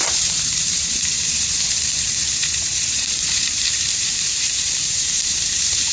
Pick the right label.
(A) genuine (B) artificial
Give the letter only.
B